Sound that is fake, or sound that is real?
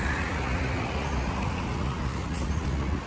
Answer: fake